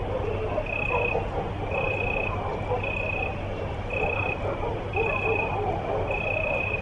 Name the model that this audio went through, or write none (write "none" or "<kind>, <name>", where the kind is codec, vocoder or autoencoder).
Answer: none